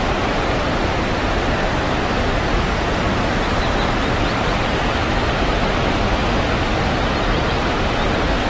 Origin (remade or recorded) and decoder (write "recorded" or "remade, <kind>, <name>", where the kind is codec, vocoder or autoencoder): remade, vocoder, BigVGAN v2